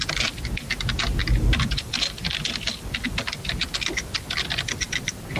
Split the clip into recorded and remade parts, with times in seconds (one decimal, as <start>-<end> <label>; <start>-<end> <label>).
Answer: 0.0-1.2 recorded; 1.2-3.4 remade; 3.4-5.4 recorded